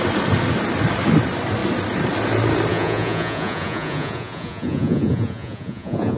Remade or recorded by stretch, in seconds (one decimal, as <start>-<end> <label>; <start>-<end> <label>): 0.0-2.7 recorded; 2.7-6.2 remade